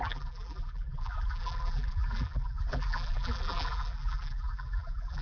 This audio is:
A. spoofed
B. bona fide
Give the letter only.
A